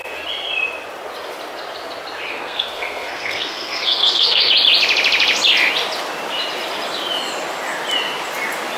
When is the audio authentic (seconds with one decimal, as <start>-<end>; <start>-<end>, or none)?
0.0-2.3; 4.5-8.8